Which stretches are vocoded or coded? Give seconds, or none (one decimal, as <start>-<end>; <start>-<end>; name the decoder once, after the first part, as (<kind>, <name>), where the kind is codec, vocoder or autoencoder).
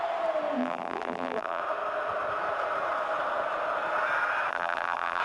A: 0.6-1.6 (vocoder, BigVGAN v2); 4.5-5.2